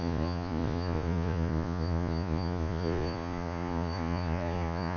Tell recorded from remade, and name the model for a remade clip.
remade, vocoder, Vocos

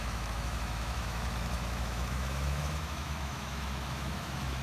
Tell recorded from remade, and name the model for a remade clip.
remade, autoencoder, DAC-VAE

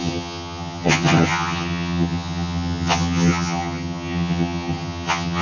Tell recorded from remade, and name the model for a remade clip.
remade, vocoder, HiFi-GAN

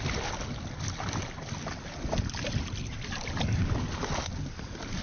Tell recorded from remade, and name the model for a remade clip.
recorded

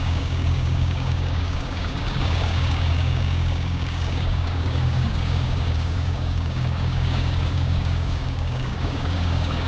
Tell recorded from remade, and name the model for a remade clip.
remade, codec, DAC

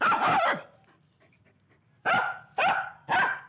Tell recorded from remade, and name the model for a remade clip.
recorded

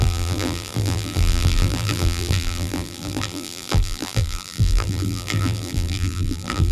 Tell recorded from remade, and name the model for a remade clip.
remade, vocoder, BigVGAN v2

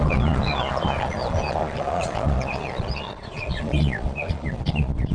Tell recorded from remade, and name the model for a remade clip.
remade, vocoder, Vocos